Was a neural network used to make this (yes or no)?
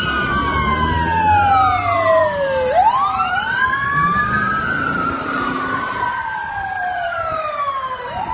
yes